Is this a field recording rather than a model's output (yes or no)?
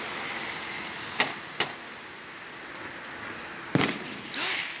yes